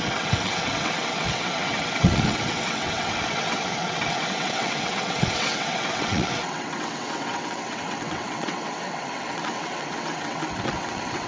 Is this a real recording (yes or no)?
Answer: no